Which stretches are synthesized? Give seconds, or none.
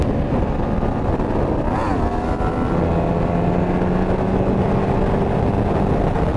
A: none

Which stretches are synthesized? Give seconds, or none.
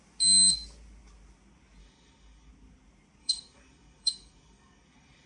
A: 1.8-2.5 (codec, DAC); 3.2-5.3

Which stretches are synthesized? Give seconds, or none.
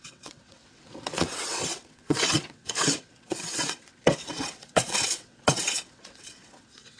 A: 0.0-7.0 (vocoder, WaveNeXt)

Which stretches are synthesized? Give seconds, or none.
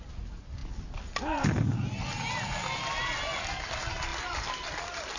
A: none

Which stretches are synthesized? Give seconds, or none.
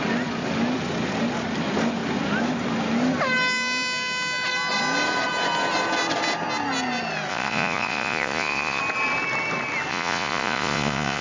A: 7.3-8.8 (vocoder, Vocos); 9.9-11.2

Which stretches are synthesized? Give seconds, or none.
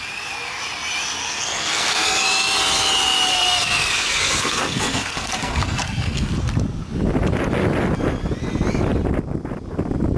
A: 1.2-2.2 (codec, SNAC); 3.3-6.3